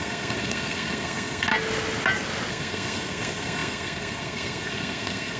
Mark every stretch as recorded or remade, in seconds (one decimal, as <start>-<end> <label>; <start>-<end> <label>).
0.0-1.5 remade; 1.5-2.5 recorded; 2.5-5.4 remade